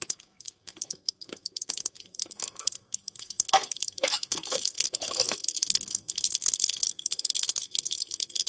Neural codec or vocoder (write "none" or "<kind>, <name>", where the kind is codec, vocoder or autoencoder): codec, SNAC